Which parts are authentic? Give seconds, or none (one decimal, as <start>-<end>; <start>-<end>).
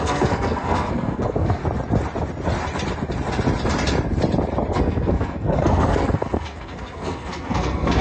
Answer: 1.6-4.7